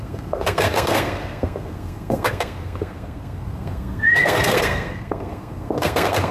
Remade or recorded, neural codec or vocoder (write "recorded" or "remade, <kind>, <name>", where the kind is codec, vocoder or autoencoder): remade, codec, SNAC